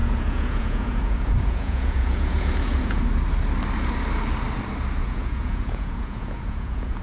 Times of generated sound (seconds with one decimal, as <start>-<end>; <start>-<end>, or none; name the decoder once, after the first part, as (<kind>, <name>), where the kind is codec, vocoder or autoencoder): 0.0-3.0 (vocoder, Vocos); 5.0-7.0